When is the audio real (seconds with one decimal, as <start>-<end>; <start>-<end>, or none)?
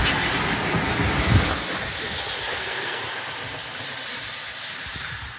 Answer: 0.0-2.5; 3.0-5.4